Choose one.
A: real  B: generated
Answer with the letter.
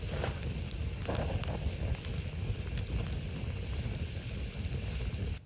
A